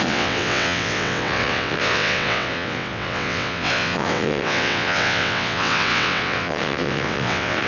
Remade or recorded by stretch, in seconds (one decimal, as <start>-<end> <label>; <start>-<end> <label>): 0.0-7.7 remade